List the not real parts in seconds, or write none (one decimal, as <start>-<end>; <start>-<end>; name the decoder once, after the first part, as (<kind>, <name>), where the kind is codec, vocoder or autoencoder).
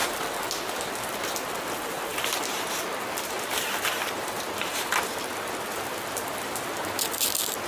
none